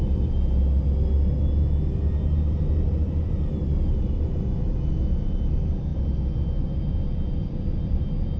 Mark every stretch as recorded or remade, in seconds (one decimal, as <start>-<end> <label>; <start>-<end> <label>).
0.0-8.4 recorded

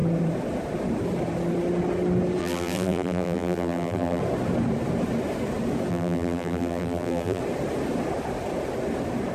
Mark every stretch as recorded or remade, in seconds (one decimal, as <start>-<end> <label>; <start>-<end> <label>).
0.0-2.4 recorded; 2.4-4.2 remade; 4.2-5.9 recorded; 5.9-7.4 remade; 7.4-9.3 recorded

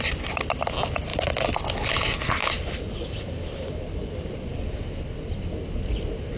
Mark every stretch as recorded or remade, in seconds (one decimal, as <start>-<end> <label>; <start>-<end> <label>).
0.0-1.1 recorded; 1.1-1.9 remade; 1.9-2.4 recorded; 2.4-4.5 remade; 4.5-6.4 recorded

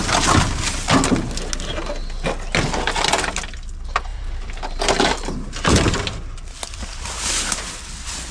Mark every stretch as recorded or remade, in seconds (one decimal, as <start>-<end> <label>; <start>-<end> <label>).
0.0-4.1 recorded; 4.1-4.6 remade; 4.6-6.9 recorded; 6.9-7.6 remade; 7.6-8.3 recorded

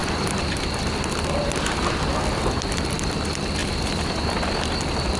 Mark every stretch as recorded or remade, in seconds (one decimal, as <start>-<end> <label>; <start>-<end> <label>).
0.0-0.6 remade; 0.6-3.6 recorded; 3.6-4.2 remade; 4.2-5.2 recorded

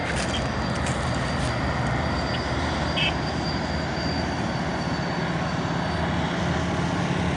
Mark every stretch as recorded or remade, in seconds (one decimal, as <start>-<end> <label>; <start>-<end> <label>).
0.0-7.4 recorded

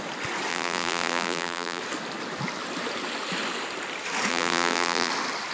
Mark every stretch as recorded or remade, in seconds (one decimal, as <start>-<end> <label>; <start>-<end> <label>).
0.0-0.5 recorded; 0.5-1.8 remade; 1.8-4.3 recorded; 4.3-5.1 remade; 5.1-5.5 recorded